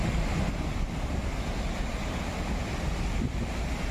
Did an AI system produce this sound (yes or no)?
no